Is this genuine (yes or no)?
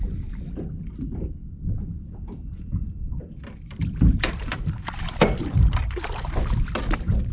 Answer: no